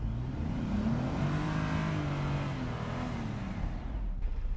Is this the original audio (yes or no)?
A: yes